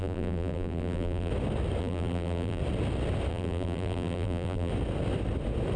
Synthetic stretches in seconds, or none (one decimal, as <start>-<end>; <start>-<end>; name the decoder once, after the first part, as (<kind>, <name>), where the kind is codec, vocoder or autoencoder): 0.0-1.3 (vocoder, BigVGAN v2); 1.8-2.6; 3.3-4.7